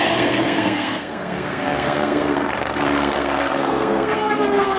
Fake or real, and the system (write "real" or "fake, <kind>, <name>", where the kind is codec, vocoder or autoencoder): fake, codec, SNAC